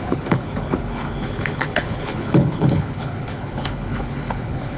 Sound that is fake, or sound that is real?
fake